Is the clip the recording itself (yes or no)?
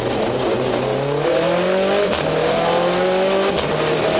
yes